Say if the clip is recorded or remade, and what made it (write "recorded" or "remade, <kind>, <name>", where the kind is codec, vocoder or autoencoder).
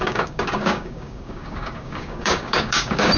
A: remade, codec, DAC